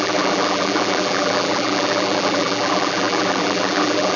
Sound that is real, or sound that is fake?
fake